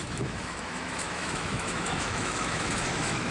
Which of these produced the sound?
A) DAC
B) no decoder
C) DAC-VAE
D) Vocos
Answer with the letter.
C